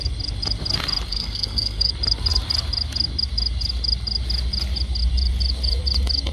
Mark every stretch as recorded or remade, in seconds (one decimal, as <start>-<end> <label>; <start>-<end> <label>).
0.0-1.1 recorded; 1.1-1.9 remade; 1.9-6.3 recorded